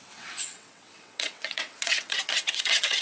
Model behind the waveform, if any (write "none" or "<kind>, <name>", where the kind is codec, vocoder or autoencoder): vocoder, WaveNeXt